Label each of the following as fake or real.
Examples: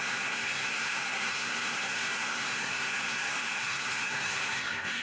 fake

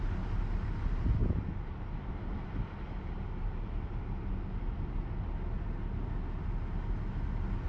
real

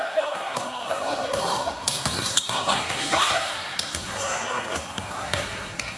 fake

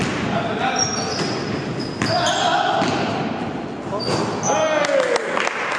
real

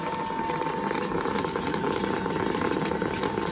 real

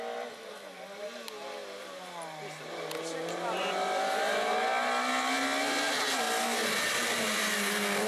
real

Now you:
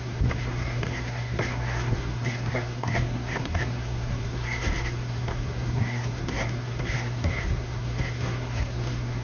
fake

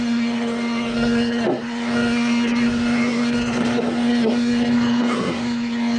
fake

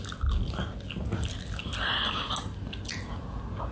real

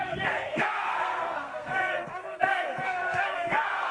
fake